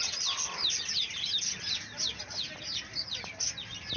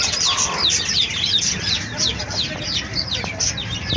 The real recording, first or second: first